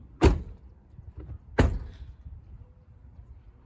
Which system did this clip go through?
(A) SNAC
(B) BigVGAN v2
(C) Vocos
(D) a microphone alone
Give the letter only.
D